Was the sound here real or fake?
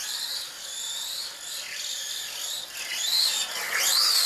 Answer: real